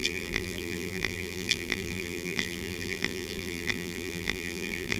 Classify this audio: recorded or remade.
remade